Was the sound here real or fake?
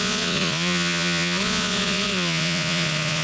fake